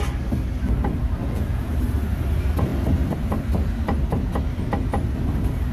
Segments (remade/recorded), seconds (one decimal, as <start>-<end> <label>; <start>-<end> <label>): 0.0-1.2 recorded; 1.2-1.7 remade; 1.7-5.7 recorded